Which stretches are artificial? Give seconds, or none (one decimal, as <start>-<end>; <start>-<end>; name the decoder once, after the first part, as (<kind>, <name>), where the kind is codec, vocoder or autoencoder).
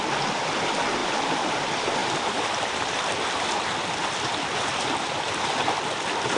1.0-1.5 (vocoder, BigVGAN v2); 2.0-5.8